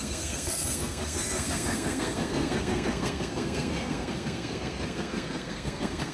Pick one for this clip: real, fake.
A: fake